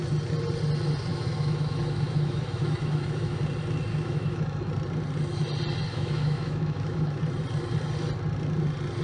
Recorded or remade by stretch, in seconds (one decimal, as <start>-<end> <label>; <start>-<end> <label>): 0.0-1.1 recorded; 1.1-3.4 remade; 3.4-3.9 recorded; 3.9-4.7 remade; 4.7-5.9 recorded; 5.9-7.2 remade; 7.2-9.0 recorded

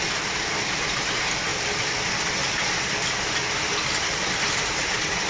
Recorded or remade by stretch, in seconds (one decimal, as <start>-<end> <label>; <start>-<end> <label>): 0.0-5.3 recorded

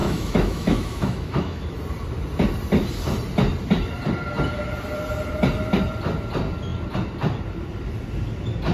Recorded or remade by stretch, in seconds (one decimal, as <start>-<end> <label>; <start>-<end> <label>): 0.0-1.6 remade; 1.6-8.7 recorded

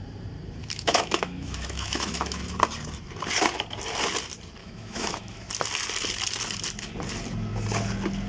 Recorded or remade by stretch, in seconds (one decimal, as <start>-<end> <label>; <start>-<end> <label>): 0.0-0.6 recorded; 0.6-2.4 remade; 2.4-4.6 recorded; 4.6-5.5 remade; 5.5-8.3 recorded

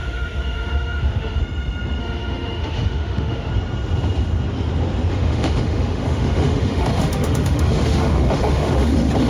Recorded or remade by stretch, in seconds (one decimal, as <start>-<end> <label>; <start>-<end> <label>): 0.0-1.4 remade; 1.4-2.0 recorded; 2.0-3.5 remade; 3.5-5.1 recorded; 5.1-9.3 remade